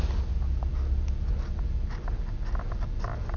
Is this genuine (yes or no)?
yes